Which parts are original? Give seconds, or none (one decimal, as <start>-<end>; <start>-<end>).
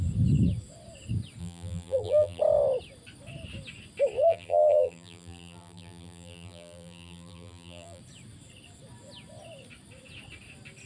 0.0-1.4; 2.4-4.2; 8.0-10.9